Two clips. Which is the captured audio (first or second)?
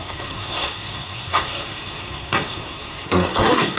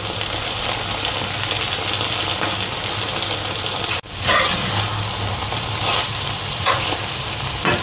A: second